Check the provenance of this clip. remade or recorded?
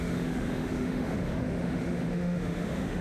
remade